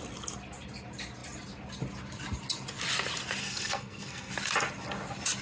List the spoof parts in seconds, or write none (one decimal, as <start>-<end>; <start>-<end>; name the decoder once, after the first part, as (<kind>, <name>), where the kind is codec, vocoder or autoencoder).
3.4-4.3 (codec, SNAC)